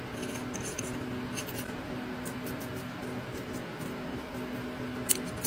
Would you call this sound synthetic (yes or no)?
no